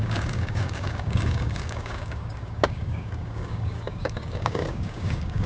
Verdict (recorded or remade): remade